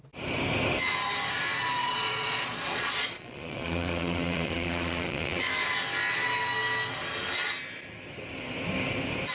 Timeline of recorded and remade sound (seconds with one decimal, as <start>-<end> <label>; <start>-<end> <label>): 0.0-1.8 recorded; 1.8-5.4 remade; 5.4-9.3 recorded